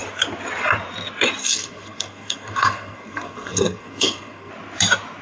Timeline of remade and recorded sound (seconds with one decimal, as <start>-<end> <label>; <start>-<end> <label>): 0.0-1.4 recorded; 1.4-4.5 remade; 4.5-5.2 recorded